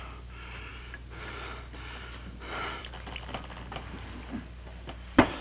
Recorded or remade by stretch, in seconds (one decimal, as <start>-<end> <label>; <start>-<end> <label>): 0.0-5.4 recorded